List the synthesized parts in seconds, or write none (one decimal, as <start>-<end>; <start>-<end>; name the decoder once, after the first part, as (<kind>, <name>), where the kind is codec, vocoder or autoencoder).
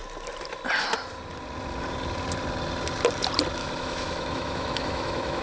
3.6-5.4 (autoencoder, DAC-VAE)